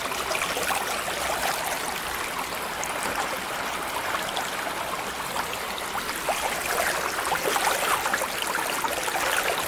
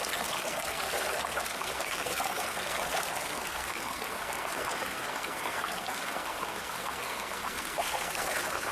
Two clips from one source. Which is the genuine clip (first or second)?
first